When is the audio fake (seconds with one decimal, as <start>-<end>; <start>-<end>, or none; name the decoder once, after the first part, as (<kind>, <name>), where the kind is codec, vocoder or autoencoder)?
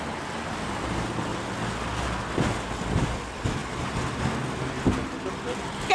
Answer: none